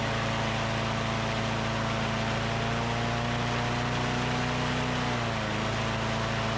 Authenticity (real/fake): real